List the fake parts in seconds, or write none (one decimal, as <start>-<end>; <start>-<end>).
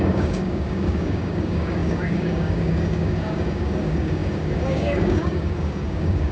0.0-6.3